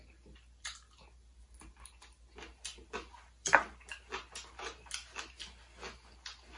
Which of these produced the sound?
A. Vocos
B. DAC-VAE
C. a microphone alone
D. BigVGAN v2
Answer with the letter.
C